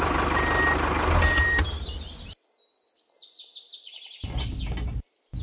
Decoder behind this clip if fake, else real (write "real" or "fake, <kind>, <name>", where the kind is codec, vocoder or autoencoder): real